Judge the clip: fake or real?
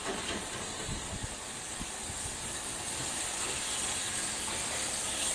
real